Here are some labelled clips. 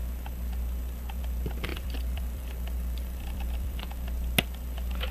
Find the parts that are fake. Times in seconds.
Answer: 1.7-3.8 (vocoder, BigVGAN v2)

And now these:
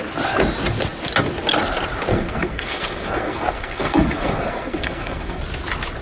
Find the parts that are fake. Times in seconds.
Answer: 2.1-5.4 (codec, SNAC)

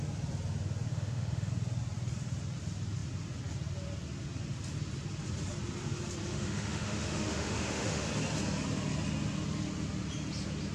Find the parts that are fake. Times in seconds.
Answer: 0.9-1.5 (autoencoder, DAC-VAE); 6.3-8.1

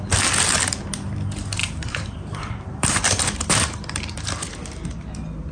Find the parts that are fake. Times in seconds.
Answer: 1.6-4.5 (vocoder, BigVGAN v2)

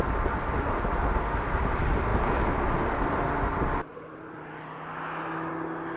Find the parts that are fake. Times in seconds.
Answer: none

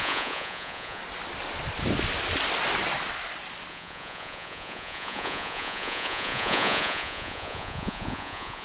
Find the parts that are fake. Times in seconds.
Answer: 0.0-1.0 (vocoder, Vocos); 3.7-8.6

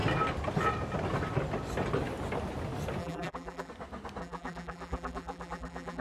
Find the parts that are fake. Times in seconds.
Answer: 3.0-3.7 (vocoder, BigVGAN v2); 4.2-6.0